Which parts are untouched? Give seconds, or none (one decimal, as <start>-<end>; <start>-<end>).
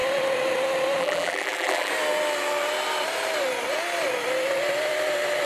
0.0-1.0; 1.9-5.5